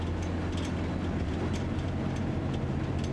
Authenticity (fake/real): real